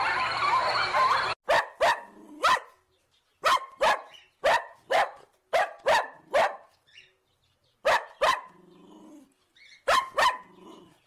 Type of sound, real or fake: real